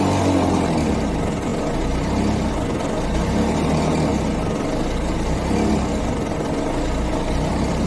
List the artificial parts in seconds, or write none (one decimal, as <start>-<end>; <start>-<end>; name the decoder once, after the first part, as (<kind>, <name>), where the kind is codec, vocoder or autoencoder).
none